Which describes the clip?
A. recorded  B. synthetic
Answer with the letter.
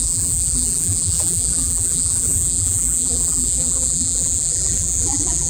B